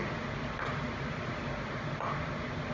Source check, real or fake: real